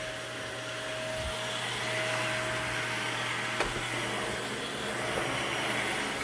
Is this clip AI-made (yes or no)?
no